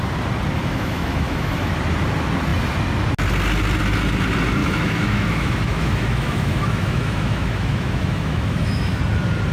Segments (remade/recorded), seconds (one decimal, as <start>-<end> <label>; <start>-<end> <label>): 0.0-0.6 recorded; 0.6-1.7 remade; 1.7-4.6 recorded; 4.6-9.0 remade; 9.0-9.5 recorded